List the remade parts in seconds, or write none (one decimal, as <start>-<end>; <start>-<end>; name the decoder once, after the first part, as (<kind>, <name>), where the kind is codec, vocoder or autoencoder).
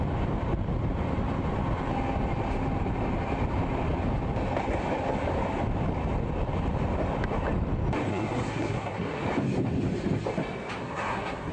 8.1-9.2 (codec, SNAC); 10.8-11.5